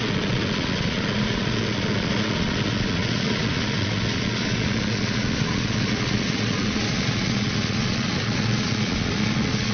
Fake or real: fake